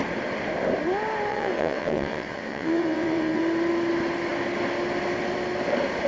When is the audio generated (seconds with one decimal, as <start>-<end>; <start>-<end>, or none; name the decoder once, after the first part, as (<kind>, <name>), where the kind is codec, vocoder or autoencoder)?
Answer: 1.3-3.4 (vocoder, WaveNeXt)